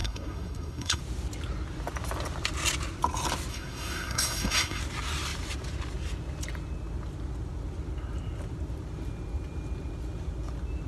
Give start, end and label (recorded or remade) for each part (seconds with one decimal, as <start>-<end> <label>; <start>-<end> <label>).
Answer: 0.0-1.0 remade; 1.0-3.5 recorded; 3.5-4.8 remade; 4.8-10.9 recorded